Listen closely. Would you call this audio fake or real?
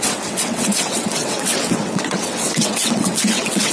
fake